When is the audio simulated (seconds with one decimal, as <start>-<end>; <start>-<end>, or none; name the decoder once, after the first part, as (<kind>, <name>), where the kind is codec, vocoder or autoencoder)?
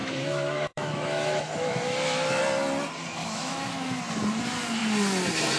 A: 0.0-2.4 (autoencoder, DAC-VAE); 3.2-4.0